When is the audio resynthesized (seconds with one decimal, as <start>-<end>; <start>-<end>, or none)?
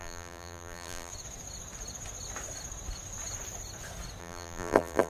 0.0-1.1; 4.2-5.1